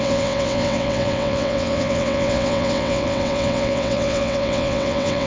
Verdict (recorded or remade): remade